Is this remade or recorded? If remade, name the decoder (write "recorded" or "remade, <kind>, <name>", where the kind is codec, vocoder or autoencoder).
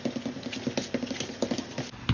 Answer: recorded